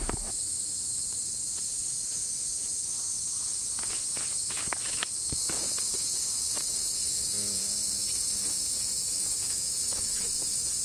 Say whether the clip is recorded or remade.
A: remade